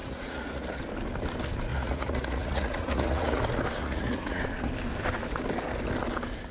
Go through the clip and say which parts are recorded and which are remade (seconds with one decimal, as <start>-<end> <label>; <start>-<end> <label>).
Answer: 0.0-0.8 remade; 0.8-1.7 recorded; 1.7-3.4 remade; 3.4-3.8 recorded; 3.8-4.4 remade; 4.4-6.5 recorded